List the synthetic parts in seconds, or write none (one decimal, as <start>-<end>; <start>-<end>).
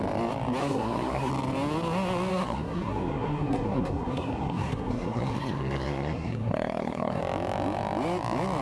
0.6-1.3; 2.3-7.2